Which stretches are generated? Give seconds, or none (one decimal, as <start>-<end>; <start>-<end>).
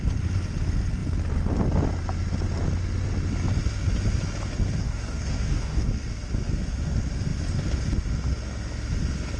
4.8-5.9